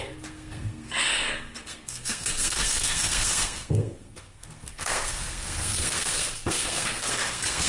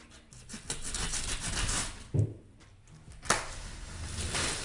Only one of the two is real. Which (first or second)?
second